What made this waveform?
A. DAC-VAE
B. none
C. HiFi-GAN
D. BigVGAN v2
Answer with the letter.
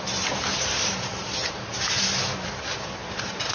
D